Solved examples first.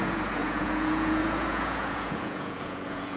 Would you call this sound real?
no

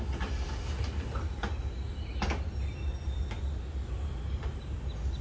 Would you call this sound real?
yes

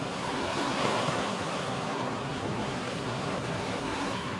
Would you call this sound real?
no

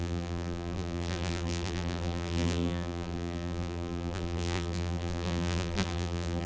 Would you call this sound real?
no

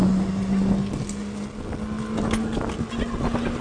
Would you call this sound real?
yes